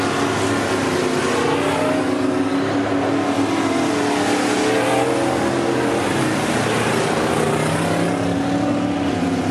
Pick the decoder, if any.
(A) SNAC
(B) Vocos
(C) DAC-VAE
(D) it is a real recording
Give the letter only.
D